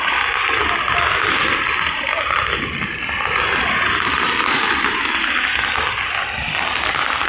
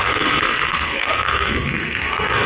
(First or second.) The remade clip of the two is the second